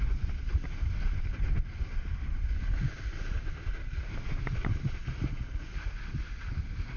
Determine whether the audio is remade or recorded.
recorded